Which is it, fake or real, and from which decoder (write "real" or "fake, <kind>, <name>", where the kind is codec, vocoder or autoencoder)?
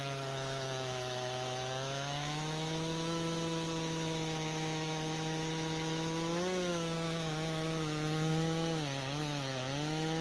fake, autoencoder, DAC-VAE